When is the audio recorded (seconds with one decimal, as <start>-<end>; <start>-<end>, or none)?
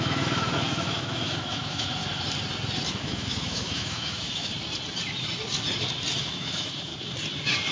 2.0-2.9; 4.5-6.2; 6.9-7.7